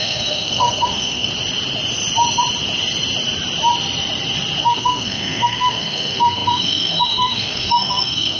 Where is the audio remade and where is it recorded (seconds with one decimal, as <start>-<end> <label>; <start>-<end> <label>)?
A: 0.0-1.3 remade; 1.3-4.6 recorded; 4.6-8.4 remade

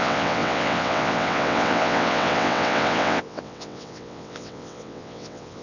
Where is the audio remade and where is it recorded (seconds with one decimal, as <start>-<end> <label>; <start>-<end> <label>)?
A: 0.0-5.6 remade